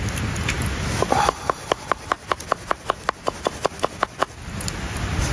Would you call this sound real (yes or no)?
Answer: yes